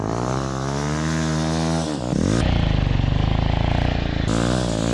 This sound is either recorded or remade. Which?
recorded